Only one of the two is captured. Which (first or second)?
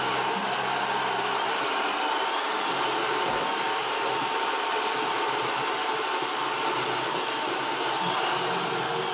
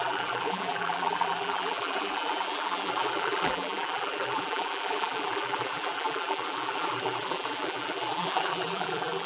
first